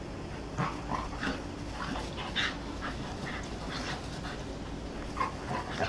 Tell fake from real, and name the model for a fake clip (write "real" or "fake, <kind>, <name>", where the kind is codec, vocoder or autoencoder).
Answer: real